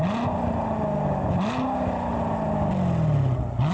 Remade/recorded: recorded